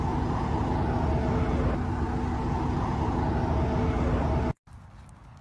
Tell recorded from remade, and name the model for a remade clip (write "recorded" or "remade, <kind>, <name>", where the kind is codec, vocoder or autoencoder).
recorded